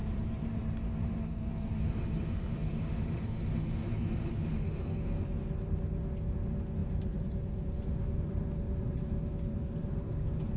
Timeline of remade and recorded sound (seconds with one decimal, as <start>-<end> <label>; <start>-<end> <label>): 0.0-4.2 remade; 4.2-6.8 recorded; 6.8-10.6 remade

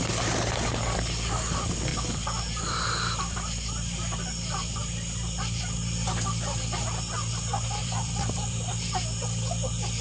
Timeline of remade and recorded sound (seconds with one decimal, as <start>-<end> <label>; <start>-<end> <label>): 0.0-1.9 recorded; 1.9-4.8 remade; 4.8-7.8 recorded; 7.8-8.7 remade; 8.7-10.0 recorded

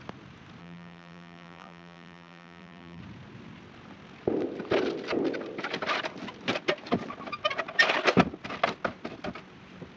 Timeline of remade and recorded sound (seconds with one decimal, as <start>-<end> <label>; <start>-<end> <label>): 0.0-0.6 recorded; 0.6-3.0 remade; 3.0-10.0 recorded

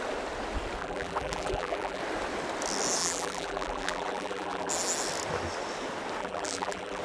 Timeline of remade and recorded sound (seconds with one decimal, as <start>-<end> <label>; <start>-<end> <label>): 0.0-0.8 recorded; 0.8-2.0 remade; 2.0-3.0 recorded; 3.0-4.7 remade; 4.7-6.2 recorded; 6.2-7.0 remade